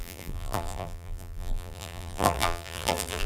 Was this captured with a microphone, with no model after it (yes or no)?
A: no